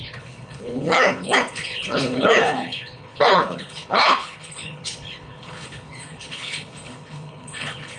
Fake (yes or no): yes